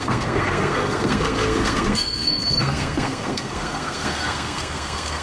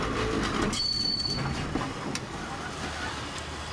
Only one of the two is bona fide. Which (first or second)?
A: second